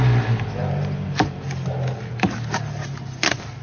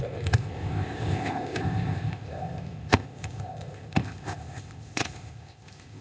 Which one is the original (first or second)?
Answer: first